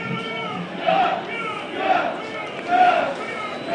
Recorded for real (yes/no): yes